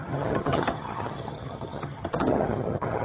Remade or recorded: remade